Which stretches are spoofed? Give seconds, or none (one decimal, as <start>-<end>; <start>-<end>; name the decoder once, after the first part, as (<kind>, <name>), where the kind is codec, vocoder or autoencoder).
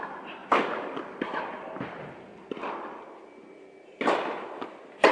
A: 2.3-3.0 (vocoder, BigVGAN v2)